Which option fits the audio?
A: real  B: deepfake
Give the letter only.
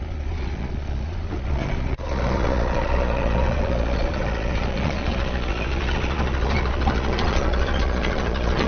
B